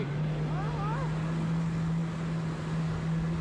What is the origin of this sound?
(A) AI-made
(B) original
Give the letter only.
B